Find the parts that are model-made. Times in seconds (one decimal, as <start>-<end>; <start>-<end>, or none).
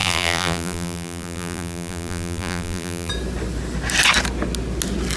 0.0-3.1